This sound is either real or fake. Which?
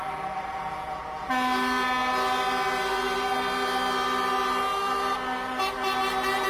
real